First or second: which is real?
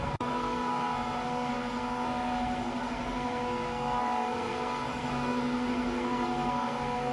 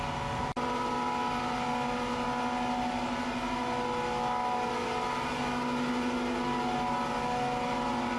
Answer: second